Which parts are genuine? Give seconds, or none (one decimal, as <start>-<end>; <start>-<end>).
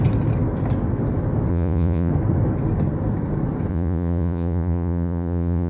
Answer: 0.0-1.5; 2.1-3.7